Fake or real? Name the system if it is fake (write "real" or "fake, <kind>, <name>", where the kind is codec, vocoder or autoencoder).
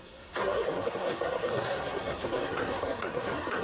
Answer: fake, codec, SNAC